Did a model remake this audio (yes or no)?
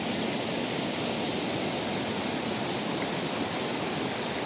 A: no